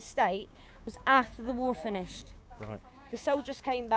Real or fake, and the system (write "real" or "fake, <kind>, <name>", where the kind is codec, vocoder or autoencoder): fake, codec, DAC